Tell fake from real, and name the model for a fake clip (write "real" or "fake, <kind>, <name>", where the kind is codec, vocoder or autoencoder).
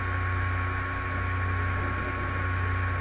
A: real